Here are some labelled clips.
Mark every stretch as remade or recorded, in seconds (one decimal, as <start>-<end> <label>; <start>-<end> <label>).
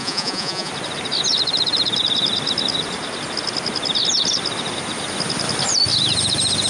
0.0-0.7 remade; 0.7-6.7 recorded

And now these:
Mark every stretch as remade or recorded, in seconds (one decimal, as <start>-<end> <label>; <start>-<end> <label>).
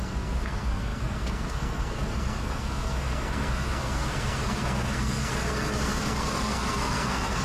0.0-7.4 remade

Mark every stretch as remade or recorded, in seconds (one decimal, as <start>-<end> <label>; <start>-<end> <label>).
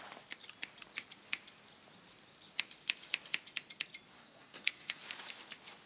0.0-4.1 recorded; 4.1-5.0 remade; 5.0-5.9 recorded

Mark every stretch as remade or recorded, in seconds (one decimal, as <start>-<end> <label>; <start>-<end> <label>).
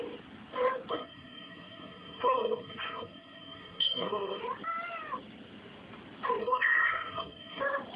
0.0-0.9 recorded; 0.9-4.4 remade; 4.4-6.4 recorded; 6.4-7.6 remade; 7.6-8.0 recorded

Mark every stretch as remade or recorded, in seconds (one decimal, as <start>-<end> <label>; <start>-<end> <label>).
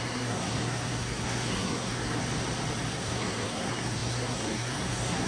0.0-2.2 remade; 2.2-2.9 recorded; 2.9-5.3 remade